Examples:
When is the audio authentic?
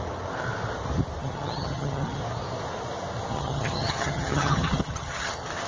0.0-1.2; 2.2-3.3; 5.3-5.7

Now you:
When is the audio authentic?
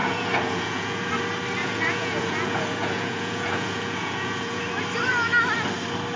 1.1-1.6; 4.7-6.2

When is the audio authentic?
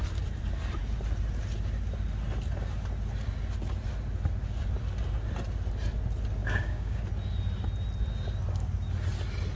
0.0-6.4; 7.0-9.6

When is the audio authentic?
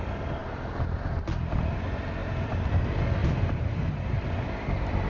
0.0-2.2; 2.7-3.2; 4.2-5.1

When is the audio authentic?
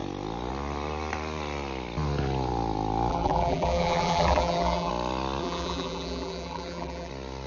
0.0-3.1; 4.9-5.4; 7.1-7.5